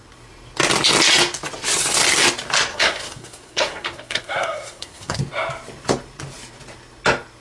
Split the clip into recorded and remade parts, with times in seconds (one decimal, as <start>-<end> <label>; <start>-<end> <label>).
0.0-2.7 recorded; 2.7-5.2 remade; 5.2-7.4 recorded